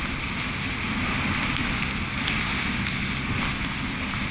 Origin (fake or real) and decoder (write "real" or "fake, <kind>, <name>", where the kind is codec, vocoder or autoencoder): real